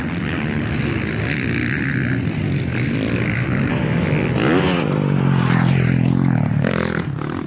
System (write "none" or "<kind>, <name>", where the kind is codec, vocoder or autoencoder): none